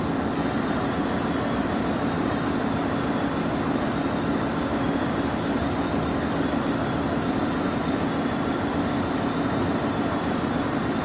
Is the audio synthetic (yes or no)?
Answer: yes